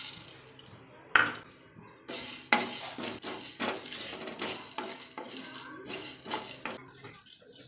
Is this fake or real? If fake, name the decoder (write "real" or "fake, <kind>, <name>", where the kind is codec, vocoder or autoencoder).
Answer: real